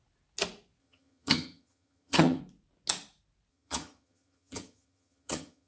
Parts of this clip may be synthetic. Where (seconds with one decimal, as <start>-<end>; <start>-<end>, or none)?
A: 0.8-2.4; 3.5-5.7